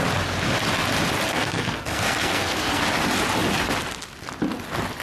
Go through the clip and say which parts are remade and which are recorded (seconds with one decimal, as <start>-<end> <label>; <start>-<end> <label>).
0.0-1.3 recorded; 1.3-2.8 remade; 2.8-5.0 recorded